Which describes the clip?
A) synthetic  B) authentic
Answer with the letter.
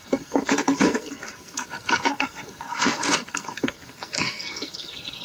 A